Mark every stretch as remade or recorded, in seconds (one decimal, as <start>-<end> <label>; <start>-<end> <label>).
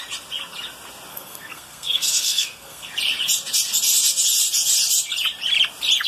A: 0.0-1.1 recorded; 1.1-2.9 remade; 2.9-6.1 recorded